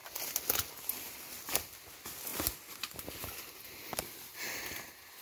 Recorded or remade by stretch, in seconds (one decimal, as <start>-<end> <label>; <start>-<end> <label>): 0.0-5.2 recorded